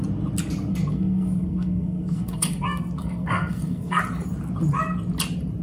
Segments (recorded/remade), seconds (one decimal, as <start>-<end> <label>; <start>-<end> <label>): 0.0-0.7 recorded; 0.7-4.0 remade; 4.0-5.6 recorded

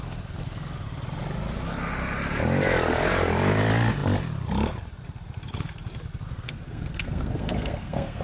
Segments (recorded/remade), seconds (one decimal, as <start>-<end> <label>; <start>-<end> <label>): 0.0-6.3 recorded; 6.3-8.2 remade

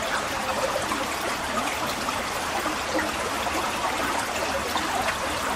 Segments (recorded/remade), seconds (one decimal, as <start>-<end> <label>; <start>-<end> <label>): 0.0-5.6 recorded